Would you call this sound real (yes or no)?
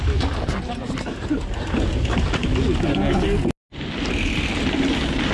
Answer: yes